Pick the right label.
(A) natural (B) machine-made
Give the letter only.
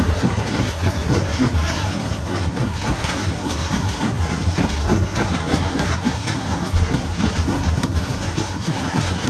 B